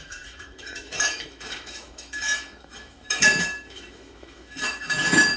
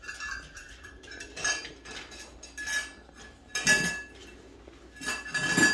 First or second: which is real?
second